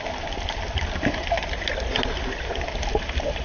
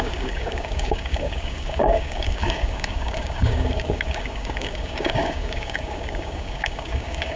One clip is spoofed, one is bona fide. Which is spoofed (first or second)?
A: second